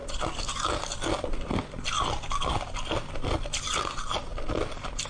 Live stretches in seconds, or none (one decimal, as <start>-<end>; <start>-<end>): 0.0-5.1